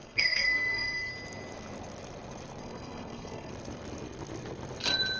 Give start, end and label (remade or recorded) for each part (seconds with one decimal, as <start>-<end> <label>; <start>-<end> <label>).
0.0-1.1 remade; 1.1-2.6 recorded; 2.6-3.5 remade; 3.5-5.2 recorded